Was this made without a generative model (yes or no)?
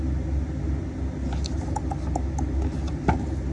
yes